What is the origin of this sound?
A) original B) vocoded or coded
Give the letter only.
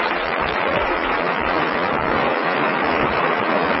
B